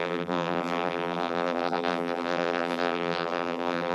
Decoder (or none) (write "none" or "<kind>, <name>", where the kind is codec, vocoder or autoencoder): vocoder, BigVGAN v2